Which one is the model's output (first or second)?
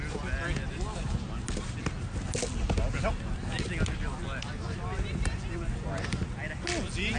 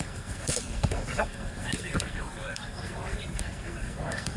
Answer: second